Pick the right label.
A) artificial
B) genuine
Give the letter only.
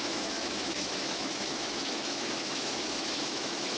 A